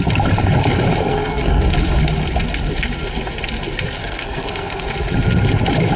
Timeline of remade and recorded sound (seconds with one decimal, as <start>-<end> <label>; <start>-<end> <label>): 0.0-1.0 recorded; 1.0-1.6 remade; 1.6-4.0 recorded; 4.0-4.8 remade; 4.8-6.0 recorded